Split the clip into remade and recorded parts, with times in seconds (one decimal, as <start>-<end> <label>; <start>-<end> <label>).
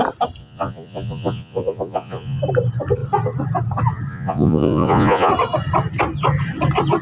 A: 0.0-0.4 recorded; 0.4-2.4 remade; 2.4-4.1 recorded; 4.1-5.3 remade; 5.3-7.0 recorded